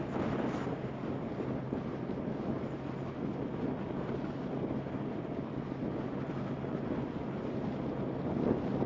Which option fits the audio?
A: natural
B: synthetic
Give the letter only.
A